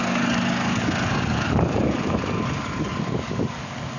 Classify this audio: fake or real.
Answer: fake